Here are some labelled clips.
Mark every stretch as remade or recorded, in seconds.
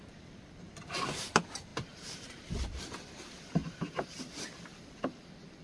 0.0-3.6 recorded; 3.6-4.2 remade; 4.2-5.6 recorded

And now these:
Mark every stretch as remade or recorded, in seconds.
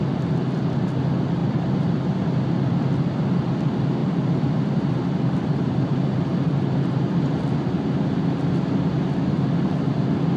0.0-1.4 recorded; 1.4-2.2 remade; 2.2-4.0 recorded; 4.0-7.7 remade; 7.7-10.4 recorded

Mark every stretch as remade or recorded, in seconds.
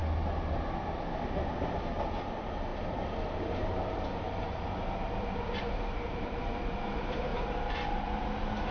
0.0-1.5 recorded; 1.5-7.3 remade; 7.3-8.7 recorded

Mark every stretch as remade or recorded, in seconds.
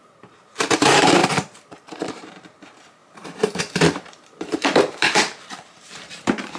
0.0-1.2 remade; 1.2-2.1 recorded; 2.1-6.6 remade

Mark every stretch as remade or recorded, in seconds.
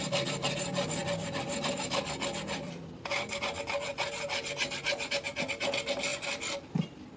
0.0-1.0 recorded; 1.0-3.4 remade; 3.4-6.1 recorded; 6.1-7.2 remade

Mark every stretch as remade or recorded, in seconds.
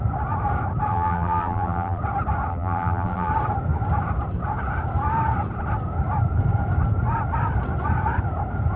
0.0-0.9 recorded; 0.9-2.0 remade; 2.0-2.5 recorded; 2.5-3.3 remade; 3.3-8.8 recorded